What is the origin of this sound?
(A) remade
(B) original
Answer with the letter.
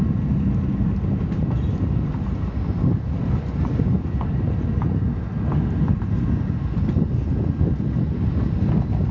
B